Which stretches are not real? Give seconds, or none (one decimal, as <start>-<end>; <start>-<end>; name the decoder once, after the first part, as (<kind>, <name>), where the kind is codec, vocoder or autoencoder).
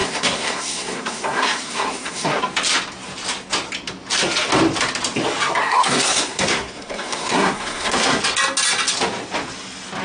0.0-2.4 (codec, SNAC); 5.6-8.2